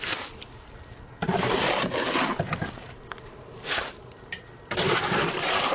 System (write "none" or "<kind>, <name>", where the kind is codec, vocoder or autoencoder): vocoder, BigVGAN v2